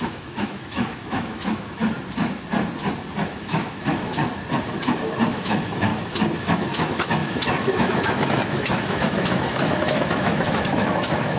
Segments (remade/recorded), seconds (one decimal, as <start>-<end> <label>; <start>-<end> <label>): 0.0-1.8 remade; 1.8-3.3 recorded; 3.3-4.2 remade; 4.2-5.3 recorded; 5.3-5.9 remade; 5.9-6.4 recorded; 6.4-11.4 remade